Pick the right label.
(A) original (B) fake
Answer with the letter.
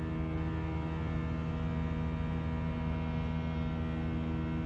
A